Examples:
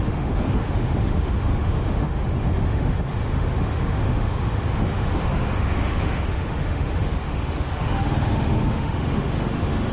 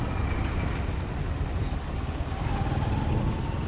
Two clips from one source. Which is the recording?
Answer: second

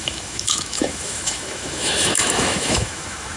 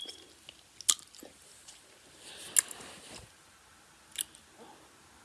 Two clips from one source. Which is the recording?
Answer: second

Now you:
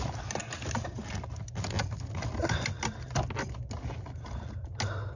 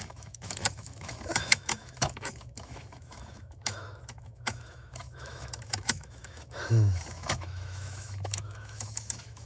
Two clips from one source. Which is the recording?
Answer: first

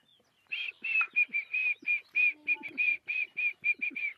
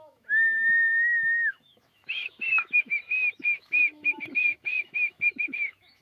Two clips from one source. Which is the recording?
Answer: first